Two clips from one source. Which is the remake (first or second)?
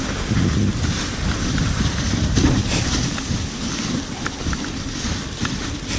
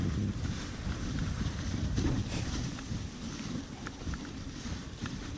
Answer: second